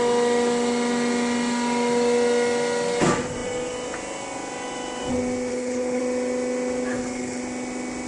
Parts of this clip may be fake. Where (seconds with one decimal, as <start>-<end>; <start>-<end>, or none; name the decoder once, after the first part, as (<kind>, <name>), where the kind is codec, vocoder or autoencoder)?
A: 5.5-6.0 (codec, HILCodec); 6.9-7.4